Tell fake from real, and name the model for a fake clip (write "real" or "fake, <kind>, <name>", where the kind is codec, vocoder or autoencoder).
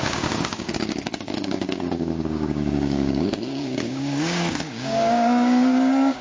fake, codec, DAC